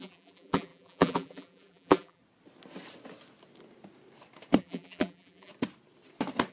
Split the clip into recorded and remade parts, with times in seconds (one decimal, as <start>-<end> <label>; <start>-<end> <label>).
0.0-2.2 remade; 2.2-4.6 recorded; 4.6-5.5 remade; 5.5-6.5 recorded